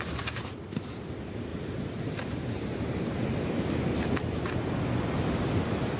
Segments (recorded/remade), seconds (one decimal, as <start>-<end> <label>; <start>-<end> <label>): 0.0-1.5 recorded; 1.5-3.3 remade; 3.3-6.0 recorded